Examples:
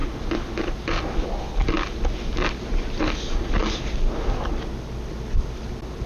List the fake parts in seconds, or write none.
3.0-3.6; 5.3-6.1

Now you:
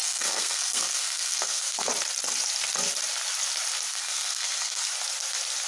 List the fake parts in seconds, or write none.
0.0-1.9; 3.9-4.9

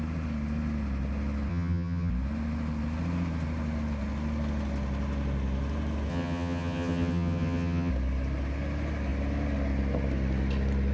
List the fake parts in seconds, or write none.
1.5-2.1; 6.1-7.9

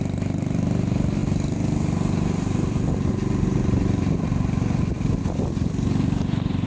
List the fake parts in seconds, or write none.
none